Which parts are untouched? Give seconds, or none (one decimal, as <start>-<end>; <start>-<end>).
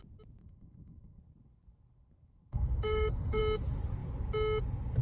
0.0-0.4; 3.4-5.0